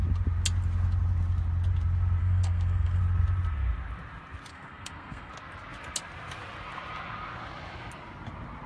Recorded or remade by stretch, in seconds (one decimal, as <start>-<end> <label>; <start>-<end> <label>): 0.0-2.2 recorded; 2.2-3.0 remade; 3.0-4.5 recorded; 4.5-5.3 remade; 5.3-8.7 recorded